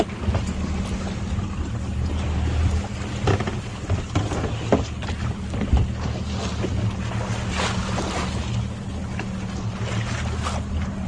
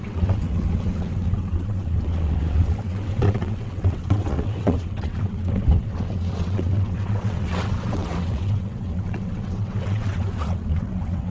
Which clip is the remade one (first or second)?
second